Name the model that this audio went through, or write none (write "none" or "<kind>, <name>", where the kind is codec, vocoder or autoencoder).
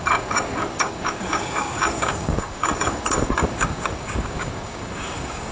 codec, DAC